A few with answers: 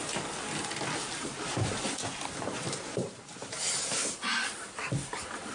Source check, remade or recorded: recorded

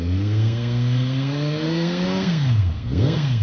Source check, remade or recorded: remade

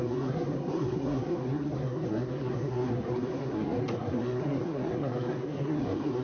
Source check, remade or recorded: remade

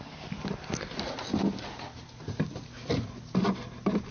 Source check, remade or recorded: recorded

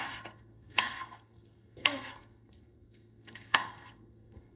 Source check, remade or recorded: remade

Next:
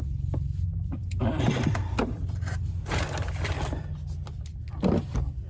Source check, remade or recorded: recorded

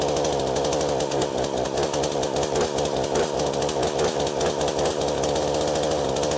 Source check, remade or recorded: recorded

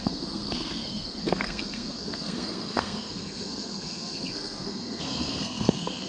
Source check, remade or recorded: remade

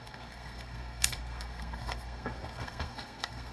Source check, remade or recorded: remade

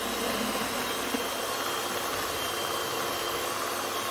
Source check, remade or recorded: recorded